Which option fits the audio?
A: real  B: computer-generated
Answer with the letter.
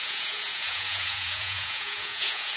B